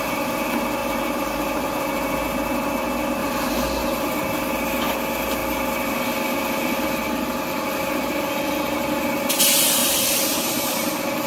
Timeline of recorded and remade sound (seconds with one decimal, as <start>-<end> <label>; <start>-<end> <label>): 0.0-3.2 recorded; 3.2-4.2 remade; 4.2-9.8 recorded; 9.8-11.3 remade